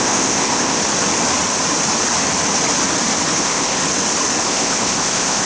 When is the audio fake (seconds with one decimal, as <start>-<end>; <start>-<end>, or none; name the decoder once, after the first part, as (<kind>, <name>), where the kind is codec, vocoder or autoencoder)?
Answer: 0.0-0.8 (codec, ZipCodec); 3.4-3.8; 4.4-5.5